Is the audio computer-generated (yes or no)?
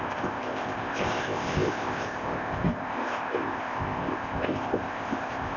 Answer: yes